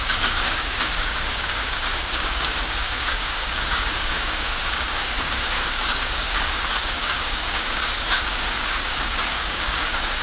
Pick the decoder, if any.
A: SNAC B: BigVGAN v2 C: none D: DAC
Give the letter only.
D